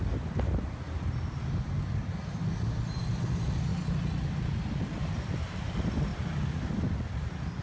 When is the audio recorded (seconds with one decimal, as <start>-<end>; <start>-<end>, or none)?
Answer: 2.0-3.0; 3.7-5.0